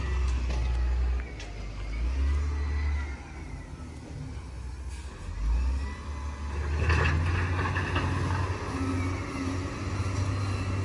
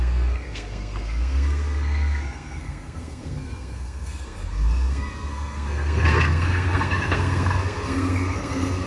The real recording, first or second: first